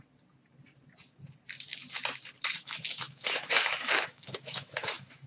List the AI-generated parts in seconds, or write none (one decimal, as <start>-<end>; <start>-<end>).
2.6-5.3